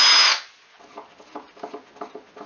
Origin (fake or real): real